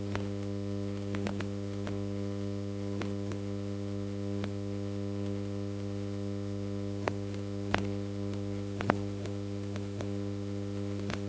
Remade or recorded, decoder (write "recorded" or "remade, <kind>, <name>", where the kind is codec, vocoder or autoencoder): remade, autoencoder, DAC-VAE